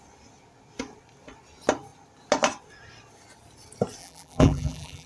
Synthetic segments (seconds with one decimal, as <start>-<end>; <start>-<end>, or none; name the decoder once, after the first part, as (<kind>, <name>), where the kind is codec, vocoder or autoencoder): 4.0-5.1 (vocoder, BigVGAN v2)

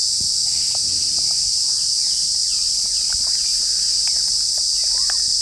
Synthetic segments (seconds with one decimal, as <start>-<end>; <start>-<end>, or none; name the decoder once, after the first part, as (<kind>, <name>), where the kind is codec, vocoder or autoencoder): 0.0-0.5 (vocoder, BigVGAN v2); 2.4-4.1